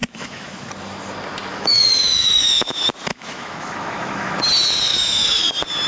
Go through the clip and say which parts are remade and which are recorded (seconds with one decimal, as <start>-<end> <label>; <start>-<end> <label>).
0.0-0.7 remade; 0.7-1.5 recorded; 1.5-2.7 remade; 2.7-3.1 recorded; 3.1-4.3 remade; 4.3-4.9 recorded; 4.9-5.5 remade; 5.5-5.9 recorded